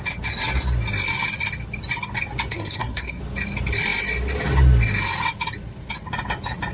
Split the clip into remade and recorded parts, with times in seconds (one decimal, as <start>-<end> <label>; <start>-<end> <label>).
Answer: 0.0-2.5 recorded; 2.5-3.2 remade; 3.2-6.7 recorded